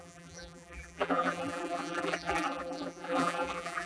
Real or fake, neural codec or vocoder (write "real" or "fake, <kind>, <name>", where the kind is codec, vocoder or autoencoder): fake, vocoder, BigVGAN v2